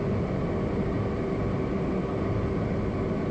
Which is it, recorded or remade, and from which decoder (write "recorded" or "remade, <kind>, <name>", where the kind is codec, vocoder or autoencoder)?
recorded